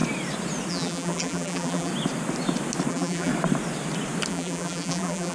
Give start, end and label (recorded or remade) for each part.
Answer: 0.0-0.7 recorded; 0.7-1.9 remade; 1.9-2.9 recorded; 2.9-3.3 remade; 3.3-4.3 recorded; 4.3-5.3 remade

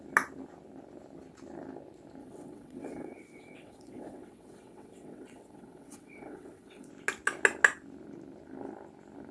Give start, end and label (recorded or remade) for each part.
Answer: 0.0-2.2 recorded; 2.2-6.9 remade; 6.9-9.3 recorded

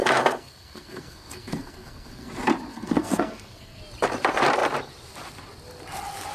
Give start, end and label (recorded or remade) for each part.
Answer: 0.0-2.3 remade; 2.3-2.7 recorded; 2.7-3.8 remade; 3.8-6.3 recorded

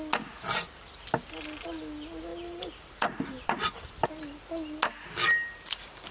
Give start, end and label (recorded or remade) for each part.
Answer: 0.0-2.3 recorded; 2.3-3.9 remade; 3.9-6.1 recorded

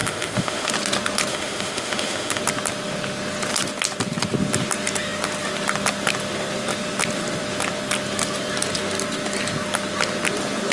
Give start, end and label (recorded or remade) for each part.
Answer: 0.0-0.7 remade; 0.7-1.3 recorded; 1.3-2.4 remade; 2.4-10.7 recorded

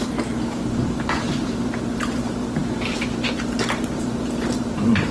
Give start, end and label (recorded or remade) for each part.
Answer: 0.0-5.1 recorded